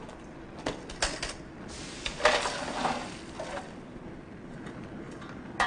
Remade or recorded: recorded